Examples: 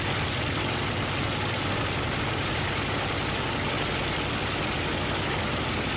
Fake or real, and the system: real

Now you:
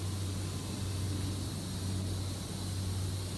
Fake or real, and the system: real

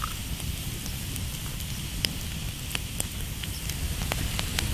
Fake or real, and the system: real